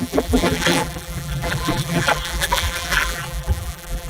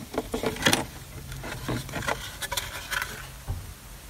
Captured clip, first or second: second